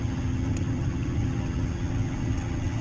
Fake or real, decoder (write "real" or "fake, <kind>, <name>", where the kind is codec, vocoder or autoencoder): fake, vocoder, HiFi-GAN